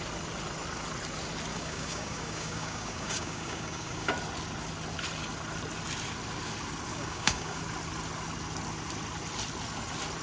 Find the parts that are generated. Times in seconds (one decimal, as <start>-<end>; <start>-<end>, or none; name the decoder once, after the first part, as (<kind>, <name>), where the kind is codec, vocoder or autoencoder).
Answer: 1.5-4.1 (codec, DAC); 6.9-7.6